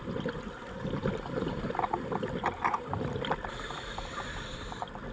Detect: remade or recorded remade